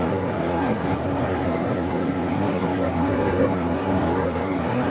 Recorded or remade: remade